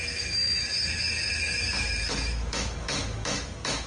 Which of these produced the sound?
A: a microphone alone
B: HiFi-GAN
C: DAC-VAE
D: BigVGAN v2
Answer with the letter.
C